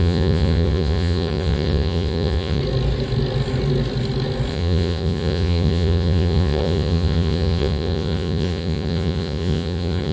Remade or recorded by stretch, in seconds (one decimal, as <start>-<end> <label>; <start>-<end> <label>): 0.0-2.6 remade; 2.6-4.5 recorded; 4.5-10.1 remade